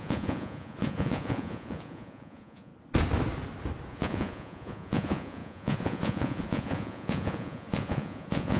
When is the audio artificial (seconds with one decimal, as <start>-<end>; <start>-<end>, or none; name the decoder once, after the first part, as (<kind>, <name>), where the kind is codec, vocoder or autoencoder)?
0.0-2.7 (vocoder, Vocos); 3.9-8.6